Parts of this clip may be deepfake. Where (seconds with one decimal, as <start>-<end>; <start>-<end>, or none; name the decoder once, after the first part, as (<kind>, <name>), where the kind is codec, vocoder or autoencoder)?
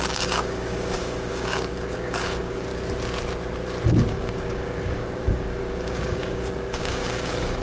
0.0-2.7 (codec, DAC); 4.1-7.6